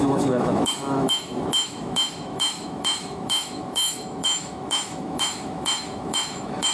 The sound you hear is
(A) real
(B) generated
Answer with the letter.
B